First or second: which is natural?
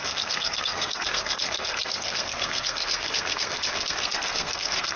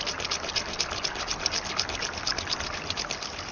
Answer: second